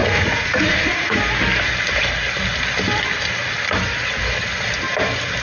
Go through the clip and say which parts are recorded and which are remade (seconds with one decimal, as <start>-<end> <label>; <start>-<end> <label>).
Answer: 0.0-1.2 remade; 1.2-5.4 recorded